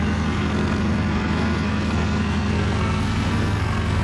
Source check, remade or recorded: remade